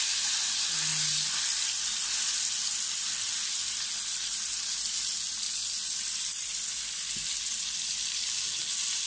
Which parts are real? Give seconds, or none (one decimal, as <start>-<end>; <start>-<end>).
0.9-5.3